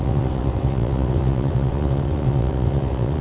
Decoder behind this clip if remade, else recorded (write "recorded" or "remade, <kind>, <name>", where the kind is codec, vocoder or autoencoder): remade, vocoder, WaveNeXt